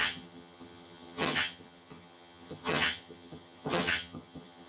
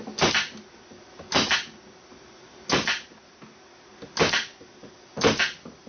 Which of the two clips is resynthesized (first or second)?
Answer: first